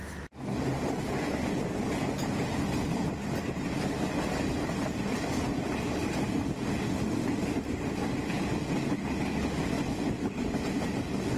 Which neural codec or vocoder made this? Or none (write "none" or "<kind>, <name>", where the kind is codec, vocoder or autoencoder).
none